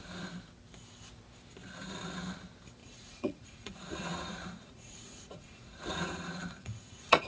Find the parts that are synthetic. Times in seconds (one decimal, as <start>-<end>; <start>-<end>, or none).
2.8-7.3

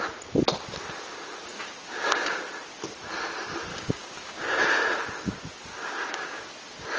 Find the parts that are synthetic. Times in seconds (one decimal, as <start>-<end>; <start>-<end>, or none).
1.5-2.4; 3.7-4.6; 5.7-6.4

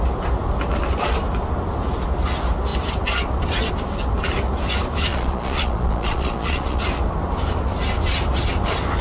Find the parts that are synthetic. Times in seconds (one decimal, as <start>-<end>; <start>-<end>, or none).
5.1-6.8

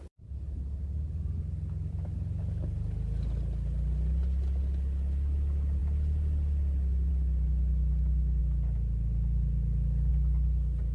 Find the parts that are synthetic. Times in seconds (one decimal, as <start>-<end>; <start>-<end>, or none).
none

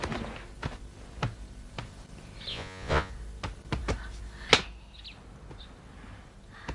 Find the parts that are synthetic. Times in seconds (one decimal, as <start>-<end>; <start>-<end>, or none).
2.5-3.1

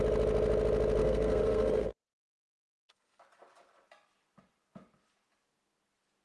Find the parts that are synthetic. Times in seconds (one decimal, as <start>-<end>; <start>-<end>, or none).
1.0-3.2

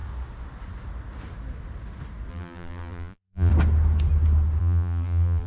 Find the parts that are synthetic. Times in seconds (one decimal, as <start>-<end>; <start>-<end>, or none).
2.3-3.5; 4.6-5.5

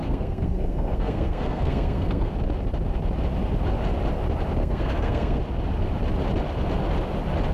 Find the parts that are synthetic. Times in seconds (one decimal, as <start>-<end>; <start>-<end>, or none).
0.0-2.3; 4.6-5.4